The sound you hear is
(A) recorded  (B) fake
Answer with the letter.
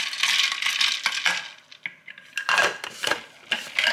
A